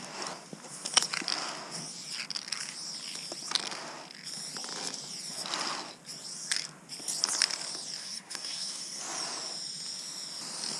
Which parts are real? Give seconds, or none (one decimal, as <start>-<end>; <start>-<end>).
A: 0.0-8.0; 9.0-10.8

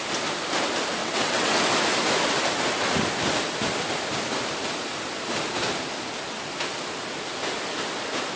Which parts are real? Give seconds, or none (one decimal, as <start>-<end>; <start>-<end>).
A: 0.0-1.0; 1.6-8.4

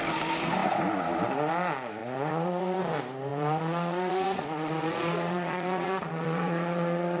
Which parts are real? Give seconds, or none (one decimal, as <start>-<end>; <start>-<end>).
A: 0.0-2.0; 2.8-3.3